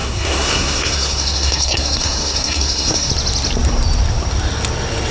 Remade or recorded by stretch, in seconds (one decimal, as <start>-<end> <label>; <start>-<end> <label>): 0.0-3.1 remade; 3.1-5.1 recorded